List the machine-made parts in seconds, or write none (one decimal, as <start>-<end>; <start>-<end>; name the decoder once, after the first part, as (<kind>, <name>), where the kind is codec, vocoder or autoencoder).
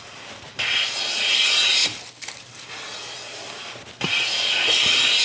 none